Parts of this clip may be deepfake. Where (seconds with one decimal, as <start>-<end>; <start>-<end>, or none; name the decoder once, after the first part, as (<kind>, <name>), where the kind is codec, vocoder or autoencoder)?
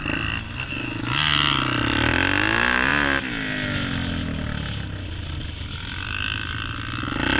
none